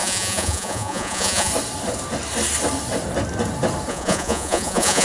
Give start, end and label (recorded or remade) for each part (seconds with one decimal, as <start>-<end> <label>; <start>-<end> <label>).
0.0-1.5 remade; 1.5-3.9 recorded; 3.9-5.0 remade